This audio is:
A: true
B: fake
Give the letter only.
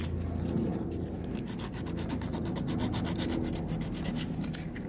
A